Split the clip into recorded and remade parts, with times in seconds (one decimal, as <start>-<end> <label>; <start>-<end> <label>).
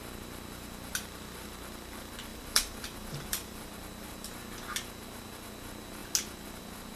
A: 0.0-2.3 recorded; 2.3-3.7 remade; 3.7-7.0 recorded